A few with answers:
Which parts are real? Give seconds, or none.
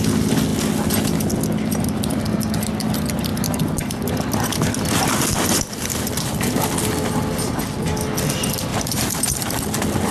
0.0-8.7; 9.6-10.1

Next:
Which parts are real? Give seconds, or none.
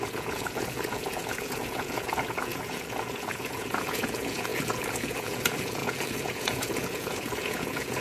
none